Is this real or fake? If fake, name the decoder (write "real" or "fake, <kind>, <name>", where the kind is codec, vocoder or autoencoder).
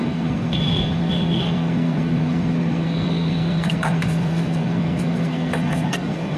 fake, codec, SNAC